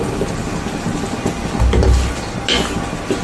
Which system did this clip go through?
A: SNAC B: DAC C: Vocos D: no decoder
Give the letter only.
D